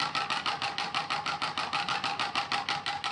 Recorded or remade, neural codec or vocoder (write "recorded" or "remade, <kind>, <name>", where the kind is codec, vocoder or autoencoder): recorded